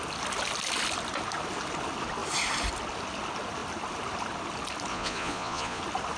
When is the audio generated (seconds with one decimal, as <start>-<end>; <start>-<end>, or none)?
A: 4.9-5.8

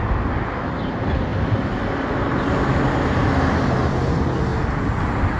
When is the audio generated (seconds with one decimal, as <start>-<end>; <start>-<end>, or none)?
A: none

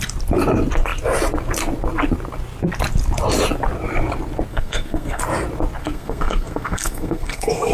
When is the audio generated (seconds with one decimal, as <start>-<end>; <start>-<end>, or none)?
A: 4.5-5.2; 5.8-7.7